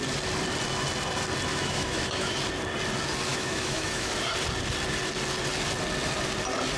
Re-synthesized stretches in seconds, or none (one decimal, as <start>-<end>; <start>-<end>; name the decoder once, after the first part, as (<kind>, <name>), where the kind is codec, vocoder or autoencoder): 1.5-2.3 (autoencoder, DAC-VAE); 3.3-4.1